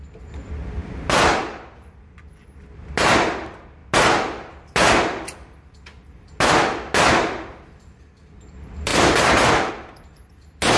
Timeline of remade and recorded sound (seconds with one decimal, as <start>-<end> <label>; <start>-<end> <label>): 0.0-10.8 recorded

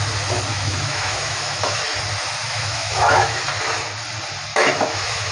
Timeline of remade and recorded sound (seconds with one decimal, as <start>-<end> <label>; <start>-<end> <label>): 0.0-0.5 recorded; 0.5-1.8 remade; 1.8-2.4 recorded; 2.4-3.4 remade; 3.4-4.5 recorded; 4.5-5.3 remade

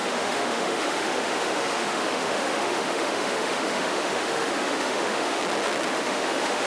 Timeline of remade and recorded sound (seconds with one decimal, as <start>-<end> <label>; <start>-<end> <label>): 0.0-5.4 remade; 5.4-5.9 recorded; 5.9-6.7 remade